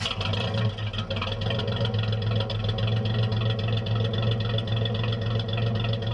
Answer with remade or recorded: recorded